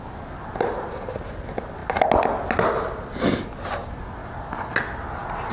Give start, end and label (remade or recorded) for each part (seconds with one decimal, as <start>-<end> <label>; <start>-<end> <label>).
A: 0.0-5.5 recorded

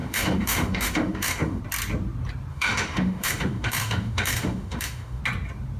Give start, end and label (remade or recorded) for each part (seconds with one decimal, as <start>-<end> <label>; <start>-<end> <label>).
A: 0.0-1.6 remade; 1.6-2.5 recorded; 2.5-5.2 remade; 5.2-5.8 recorded

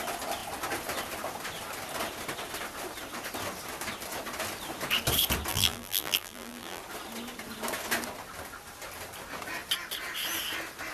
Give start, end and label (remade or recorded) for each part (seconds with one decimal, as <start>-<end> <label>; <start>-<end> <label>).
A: 0.0-5.5 recorded; 5.5-6.8 remade; 6.8-10.9 recorded

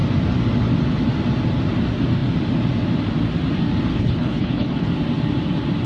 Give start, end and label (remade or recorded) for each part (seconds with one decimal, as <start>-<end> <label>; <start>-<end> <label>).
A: 0.0-3.9 recorded; 3.9-4.9 remade; 4.9-5.9 recorded

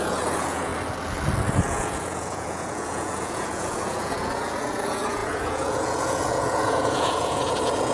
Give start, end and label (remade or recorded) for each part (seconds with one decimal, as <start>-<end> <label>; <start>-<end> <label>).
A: 0.0-0.7 remade; 0.7-1.5 recorded; 1.5-7.9 remade

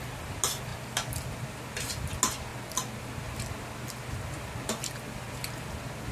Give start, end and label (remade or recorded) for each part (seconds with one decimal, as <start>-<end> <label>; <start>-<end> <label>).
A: 0.0-6.1 recorded

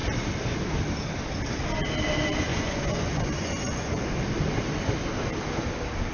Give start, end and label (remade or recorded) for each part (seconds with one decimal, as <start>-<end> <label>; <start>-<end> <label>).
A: 0.0-2.5 recorded; 2.5-4.1 remade; 4.1-6.1 recorded